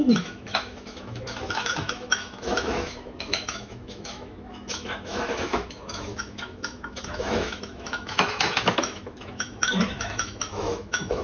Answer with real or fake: fake